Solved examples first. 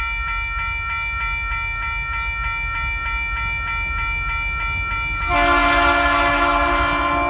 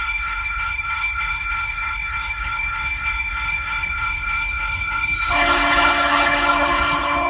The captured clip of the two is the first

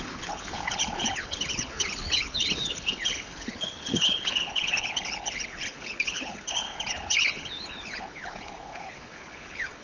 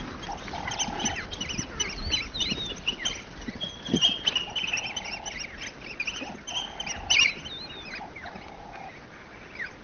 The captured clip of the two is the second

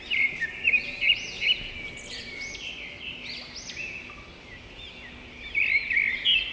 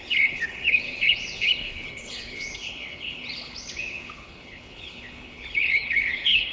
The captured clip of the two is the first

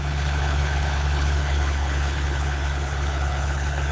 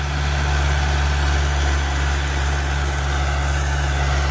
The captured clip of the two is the second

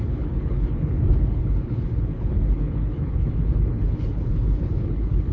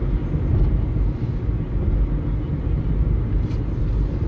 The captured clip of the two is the second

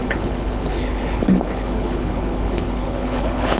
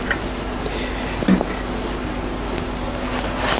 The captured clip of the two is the second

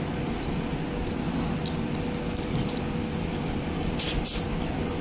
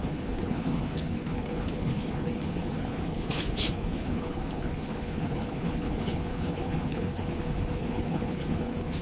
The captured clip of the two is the first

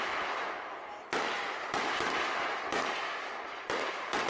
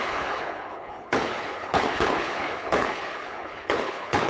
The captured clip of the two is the first